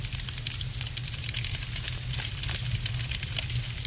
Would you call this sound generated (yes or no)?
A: no